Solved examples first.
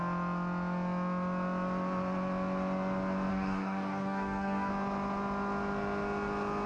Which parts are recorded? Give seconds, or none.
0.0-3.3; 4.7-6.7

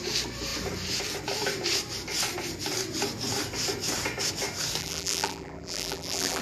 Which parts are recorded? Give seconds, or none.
0.0-4.8

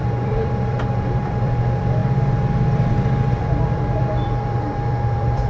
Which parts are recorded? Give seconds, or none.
2.0-3.3

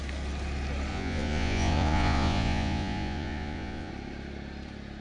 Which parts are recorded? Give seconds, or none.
0.0-0.9; 3.9-5.0